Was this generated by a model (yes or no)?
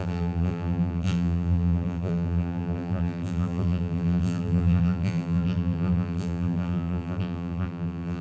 yes